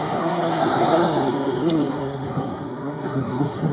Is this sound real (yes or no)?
no